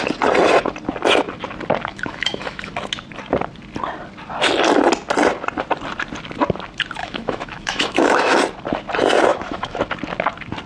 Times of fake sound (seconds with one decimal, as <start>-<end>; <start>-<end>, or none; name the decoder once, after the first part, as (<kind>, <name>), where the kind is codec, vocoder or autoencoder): 1.9-2.7 (autoencoder, DAC-VAE); 7.0-8.4; 9.3-9.8